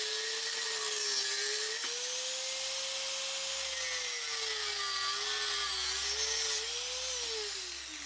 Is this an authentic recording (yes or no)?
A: yes